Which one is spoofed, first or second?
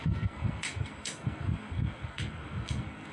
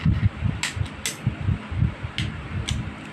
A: first